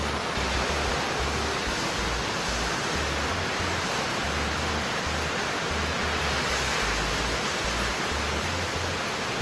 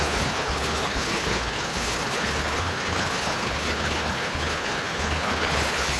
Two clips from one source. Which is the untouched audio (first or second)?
first